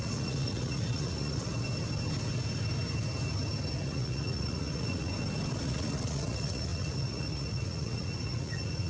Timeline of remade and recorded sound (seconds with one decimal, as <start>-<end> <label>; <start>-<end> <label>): 0.0-1.5 remade; 1.5-3.7 recorded; 3.7-5.1 remade; 5.1-5.6 recorded; 5.6-8.9 remade